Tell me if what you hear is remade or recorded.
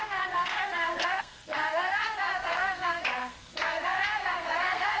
remade